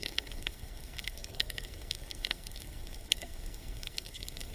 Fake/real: fake